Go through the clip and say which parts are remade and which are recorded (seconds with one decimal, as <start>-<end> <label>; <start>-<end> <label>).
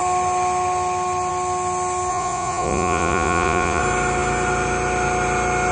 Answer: 0.0-2.1 recorded; 2.1-3.8 remade; 3.8-5.7 recorded